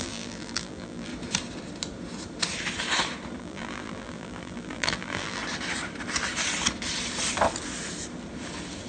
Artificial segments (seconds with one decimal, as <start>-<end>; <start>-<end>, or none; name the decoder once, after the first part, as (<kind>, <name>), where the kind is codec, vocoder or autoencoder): 0.0-1.1 (vocoder, BigVGAN v2); 3.4-5.4